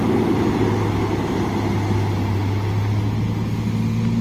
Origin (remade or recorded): recorded